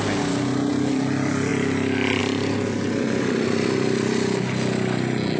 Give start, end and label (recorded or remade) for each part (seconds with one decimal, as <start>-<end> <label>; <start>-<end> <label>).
0.0-5.4 recorded